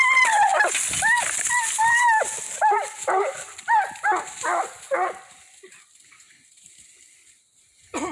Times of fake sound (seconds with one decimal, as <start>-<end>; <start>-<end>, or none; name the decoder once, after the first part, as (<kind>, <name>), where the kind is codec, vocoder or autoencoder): none